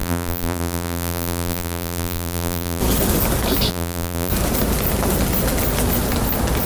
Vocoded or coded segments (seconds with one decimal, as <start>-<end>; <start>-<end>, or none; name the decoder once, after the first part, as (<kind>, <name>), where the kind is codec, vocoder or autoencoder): 0.0-2.8 (vocoder, BigVGAN v2); 3.7-4.3